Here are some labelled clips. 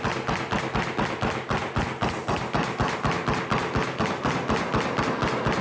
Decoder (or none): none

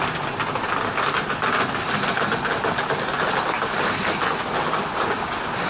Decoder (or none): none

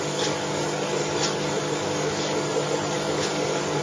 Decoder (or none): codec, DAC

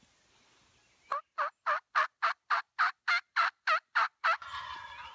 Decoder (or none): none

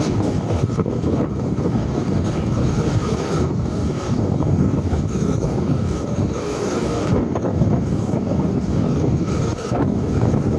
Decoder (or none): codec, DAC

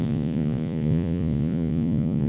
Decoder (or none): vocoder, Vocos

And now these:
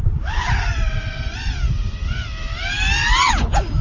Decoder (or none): none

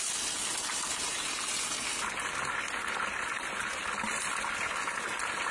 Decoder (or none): none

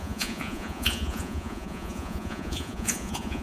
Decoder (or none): vocoder, Vocos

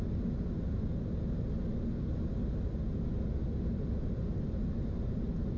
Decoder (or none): none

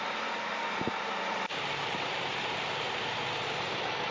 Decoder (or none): none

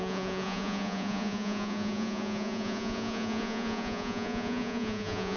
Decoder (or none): vocoder, Vocos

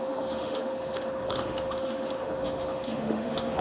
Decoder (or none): autoencoder, DAC-VAE